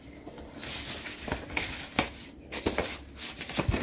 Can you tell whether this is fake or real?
real